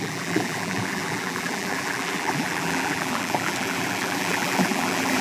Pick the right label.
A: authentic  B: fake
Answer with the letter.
B